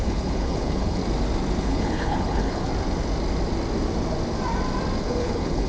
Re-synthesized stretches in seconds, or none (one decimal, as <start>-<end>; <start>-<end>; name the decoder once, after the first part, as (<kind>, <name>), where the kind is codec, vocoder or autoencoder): 0.0-1.0 (codec, HILCodec); 1.6-2.7; 5.0-5.7